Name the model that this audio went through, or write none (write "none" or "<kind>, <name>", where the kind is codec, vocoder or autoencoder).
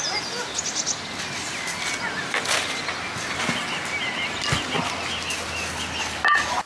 none